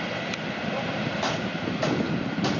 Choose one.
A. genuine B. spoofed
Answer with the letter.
A